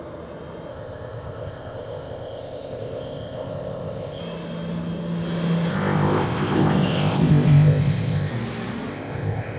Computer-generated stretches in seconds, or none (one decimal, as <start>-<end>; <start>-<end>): 0.7-4.2; 5.7-8.3; 8.9-9.6

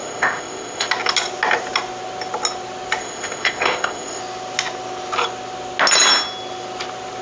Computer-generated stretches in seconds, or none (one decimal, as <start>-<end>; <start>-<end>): 0.0-0.9; 3.0-4.2

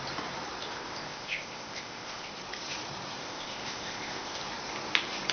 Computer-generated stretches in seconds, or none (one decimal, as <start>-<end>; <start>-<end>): 0.6-2.3; 3.2-4.4